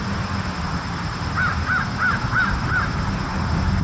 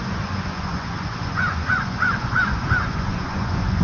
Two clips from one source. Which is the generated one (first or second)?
second